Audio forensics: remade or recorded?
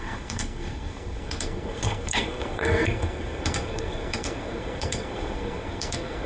remade